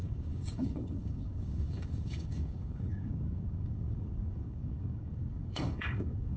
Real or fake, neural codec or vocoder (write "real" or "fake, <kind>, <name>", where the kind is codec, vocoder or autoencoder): fake, codec, DAC